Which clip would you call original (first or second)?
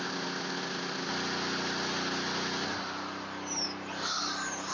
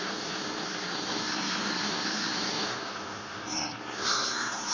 first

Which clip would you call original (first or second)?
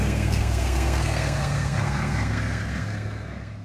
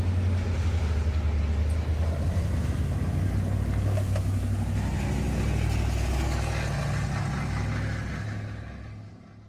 second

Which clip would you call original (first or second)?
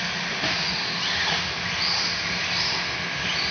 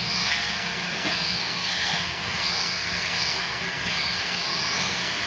first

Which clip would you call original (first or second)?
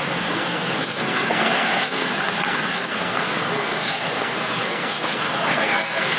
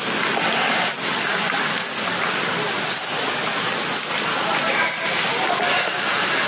second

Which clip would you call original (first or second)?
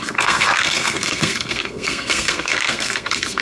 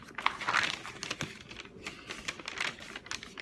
second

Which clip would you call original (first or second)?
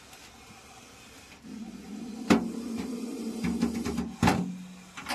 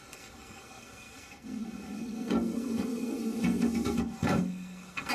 first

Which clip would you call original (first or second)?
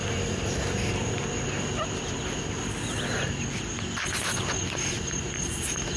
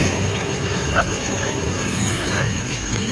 first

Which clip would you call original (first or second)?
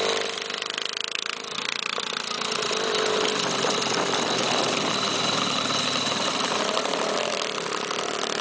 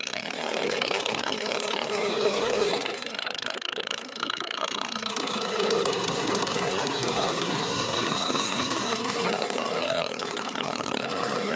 first